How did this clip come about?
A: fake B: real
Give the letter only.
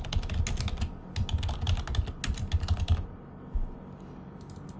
B